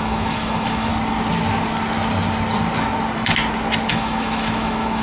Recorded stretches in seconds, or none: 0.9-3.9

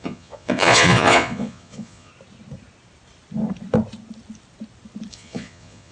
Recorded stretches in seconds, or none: 2.1-5.1